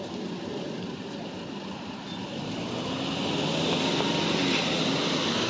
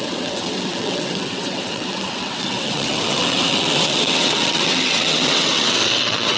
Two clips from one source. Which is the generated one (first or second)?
second